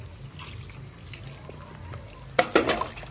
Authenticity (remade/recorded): recorded